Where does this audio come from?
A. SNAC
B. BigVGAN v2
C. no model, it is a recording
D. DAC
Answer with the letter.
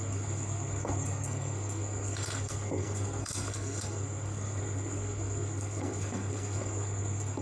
A